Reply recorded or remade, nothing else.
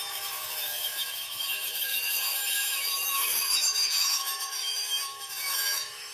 remade